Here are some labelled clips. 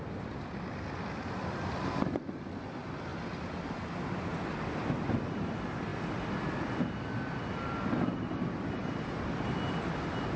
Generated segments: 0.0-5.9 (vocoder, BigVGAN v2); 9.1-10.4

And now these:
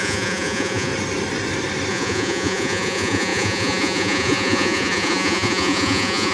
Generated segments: 0.0-0.9 (vocoder, Vocos); 1.9-6.3

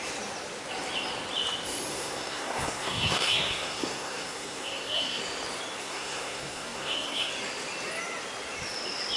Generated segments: 1.9-5.2 (codec, SNAC); 5.8-7.3

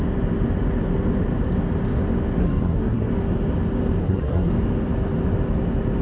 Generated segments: 2.4-3.1 (codec, SNAC); 4.0-4.5

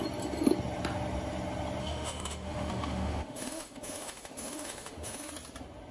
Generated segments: 1.8-5.3 (autoencoder, DAC-VAE)

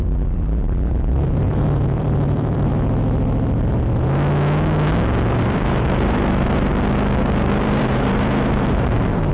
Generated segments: 1.1-2.7 (vocoder, BigVGAN v2); 5.4-6.7; 7.2-9.3

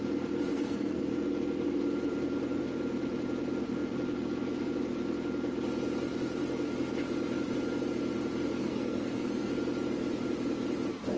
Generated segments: 0.5-1.0 (codec, SNAC); 8.6-9.5

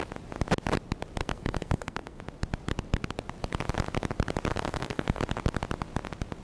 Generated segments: 1.2-2.2 (codec, SNAC); 4.5-5.2